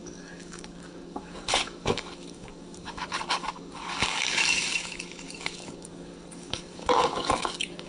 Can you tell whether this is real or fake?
fake